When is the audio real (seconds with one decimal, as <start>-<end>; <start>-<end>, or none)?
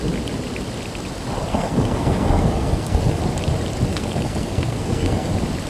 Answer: 0.0-1.5; 3.2-3.9; 5.3-5.7